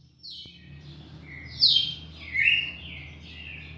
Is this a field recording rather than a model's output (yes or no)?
yes